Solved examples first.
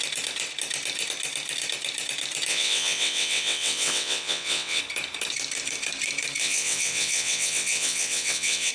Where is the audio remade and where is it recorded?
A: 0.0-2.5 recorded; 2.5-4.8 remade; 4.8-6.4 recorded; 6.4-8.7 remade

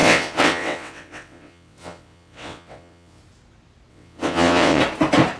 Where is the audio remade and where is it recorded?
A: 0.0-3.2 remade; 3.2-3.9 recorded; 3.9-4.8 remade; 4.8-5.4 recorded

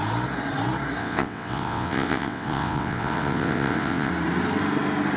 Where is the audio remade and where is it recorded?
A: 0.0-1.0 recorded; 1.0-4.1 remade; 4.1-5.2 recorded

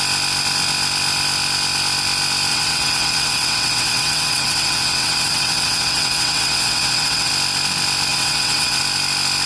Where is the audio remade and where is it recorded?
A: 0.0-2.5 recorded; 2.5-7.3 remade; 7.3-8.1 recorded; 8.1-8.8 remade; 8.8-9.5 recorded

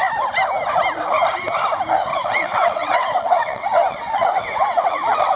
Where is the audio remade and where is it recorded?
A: 0.0-2.1 recorded; 2.1-5.4 remade